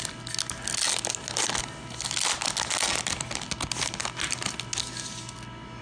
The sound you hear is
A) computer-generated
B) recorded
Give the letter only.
B